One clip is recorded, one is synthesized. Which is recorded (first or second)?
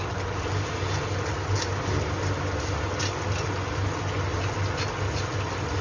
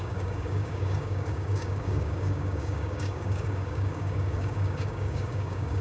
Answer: first